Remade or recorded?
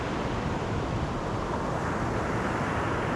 recorded